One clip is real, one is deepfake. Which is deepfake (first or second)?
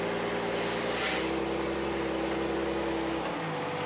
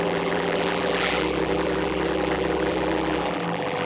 second